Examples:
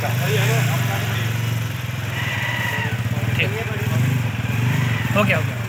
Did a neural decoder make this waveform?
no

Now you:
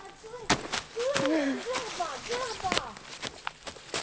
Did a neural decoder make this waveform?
no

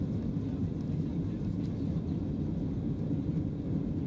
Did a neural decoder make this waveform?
no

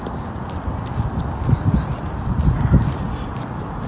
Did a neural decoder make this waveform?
no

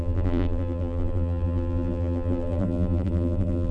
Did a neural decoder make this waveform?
yes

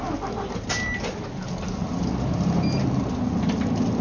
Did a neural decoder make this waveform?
no